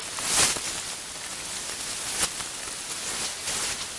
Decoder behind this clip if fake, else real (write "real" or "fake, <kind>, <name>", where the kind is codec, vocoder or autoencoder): real